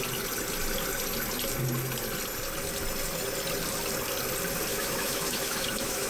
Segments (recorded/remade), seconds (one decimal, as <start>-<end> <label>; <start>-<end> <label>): 0.0-4.7 recorded; 4.7-6.1 remade